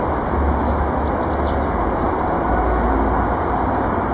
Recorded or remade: recorded